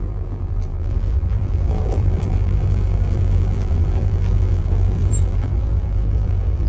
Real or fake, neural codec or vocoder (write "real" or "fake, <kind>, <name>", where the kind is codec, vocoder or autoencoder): fake, vocoder, BigVGAN v2